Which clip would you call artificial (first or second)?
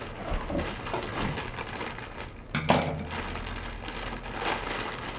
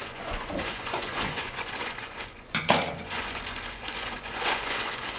second